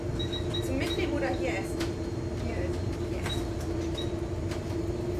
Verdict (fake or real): real